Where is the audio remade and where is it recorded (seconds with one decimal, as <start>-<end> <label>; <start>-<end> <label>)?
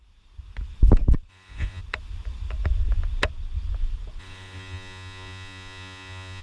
0.0-1.3 recorded; 1.3-1.8 remade; 1.8-4.2 recorded; 4.2-6.4 remade